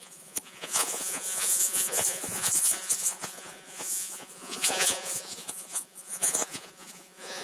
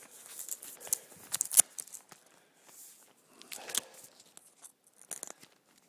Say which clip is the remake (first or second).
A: first